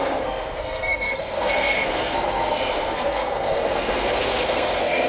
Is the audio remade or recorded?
remade